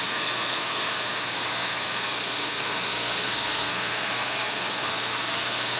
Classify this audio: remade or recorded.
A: remade